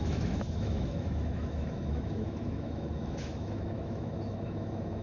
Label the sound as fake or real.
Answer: fake